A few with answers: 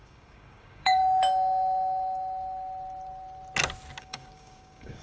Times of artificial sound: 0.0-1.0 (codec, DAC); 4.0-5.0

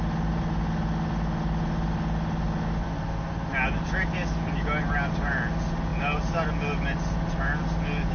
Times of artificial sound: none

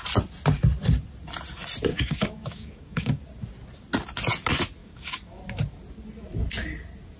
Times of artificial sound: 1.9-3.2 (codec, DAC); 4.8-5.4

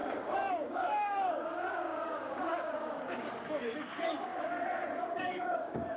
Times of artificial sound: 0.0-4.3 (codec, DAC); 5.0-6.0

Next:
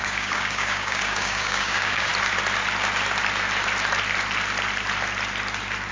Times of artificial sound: 0.0-2.1 (codec, DAC)